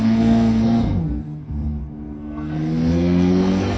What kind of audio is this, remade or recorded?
remade